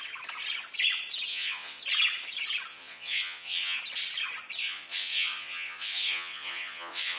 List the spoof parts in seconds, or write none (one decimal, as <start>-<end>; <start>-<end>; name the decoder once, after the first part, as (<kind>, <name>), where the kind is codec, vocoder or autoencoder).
1.3-1.8 (vocoder, Vocos); 2.7-3.8; 4.6-7.2